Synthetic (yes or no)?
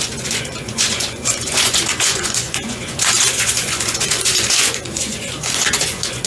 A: yes